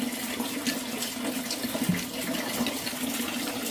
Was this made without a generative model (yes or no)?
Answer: yes